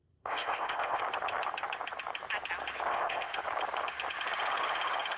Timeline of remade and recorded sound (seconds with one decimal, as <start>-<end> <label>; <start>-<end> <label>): 0.0-1.0 remade; 1.0-2.9 recorded; 2.9-3.4 remade; 3.4-5.2 recorded